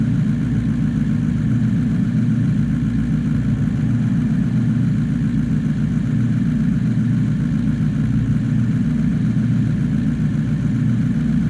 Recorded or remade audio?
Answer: recorded